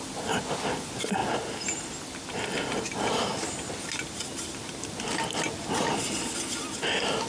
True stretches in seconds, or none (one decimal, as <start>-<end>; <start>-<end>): 0.0-7.3